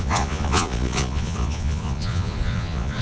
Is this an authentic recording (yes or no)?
no